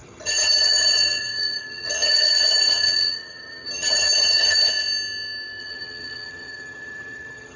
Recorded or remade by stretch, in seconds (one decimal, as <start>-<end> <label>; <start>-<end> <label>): 0.0-4.7 remade; 4.7-5.6 recorded; 5.6-7.6 remade